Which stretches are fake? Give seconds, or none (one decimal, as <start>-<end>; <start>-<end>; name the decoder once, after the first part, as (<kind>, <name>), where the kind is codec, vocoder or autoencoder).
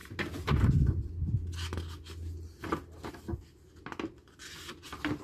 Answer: none